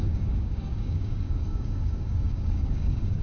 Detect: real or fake fake